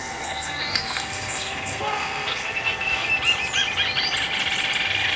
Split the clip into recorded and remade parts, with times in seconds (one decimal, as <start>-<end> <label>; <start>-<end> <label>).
0.0-3.1 remade; 3.1-5.2 recorded